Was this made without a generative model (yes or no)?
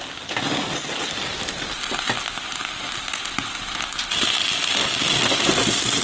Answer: yes